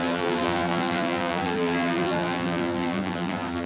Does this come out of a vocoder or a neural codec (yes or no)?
yes